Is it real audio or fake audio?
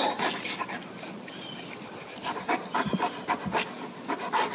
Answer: real